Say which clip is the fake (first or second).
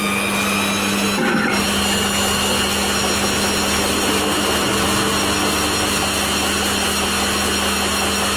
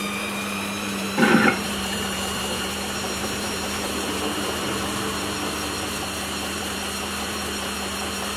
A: second